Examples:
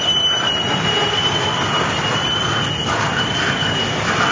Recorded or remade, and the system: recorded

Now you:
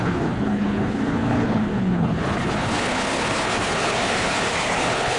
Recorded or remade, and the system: remade, codec, HILCodec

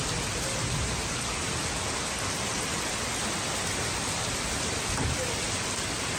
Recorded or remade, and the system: recorded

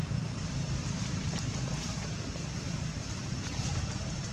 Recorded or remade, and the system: remade, vocoder, BigVGAN v2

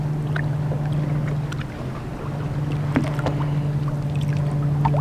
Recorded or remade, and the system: recorded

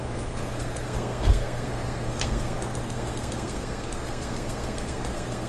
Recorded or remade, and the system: remade, codec, SNAC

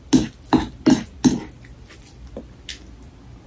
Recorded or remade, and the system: recorded